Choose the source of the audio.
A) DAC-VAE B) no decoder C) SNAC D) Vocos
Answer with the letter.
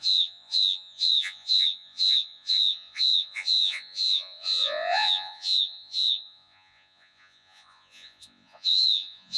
D